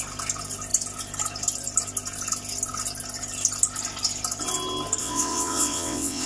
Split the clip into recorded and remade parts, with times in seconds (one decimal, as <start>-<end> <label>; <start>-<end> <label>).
0.0-5.0 recorded; 5.0-6.3 remade